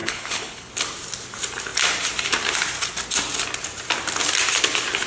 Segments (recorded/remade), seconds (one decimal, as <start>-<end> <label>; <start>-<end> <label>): 0.0-0.7 remade; 0.7-5.1 recorded